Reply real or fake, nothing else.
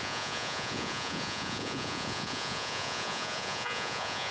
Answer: fake